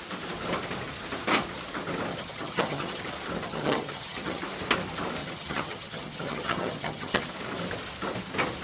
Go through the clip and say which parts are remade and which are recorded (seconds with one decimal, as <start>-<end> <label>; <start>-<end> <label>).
0.0-2.1 recorded; 2.1-3.0 remade; 3.0-3.5 recorded; 3.5-4.4 remade; 4.4-5.2 recorded; 5.2-7.2 remade; 7.2-8.6 recorded